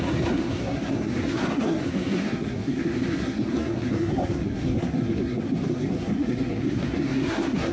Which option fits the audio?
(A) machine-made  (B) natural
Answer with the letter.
A